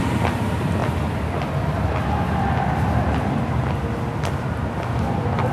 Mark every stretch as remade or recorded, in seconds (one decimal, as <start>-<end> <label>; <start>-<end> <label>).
0.0-5.5 recorded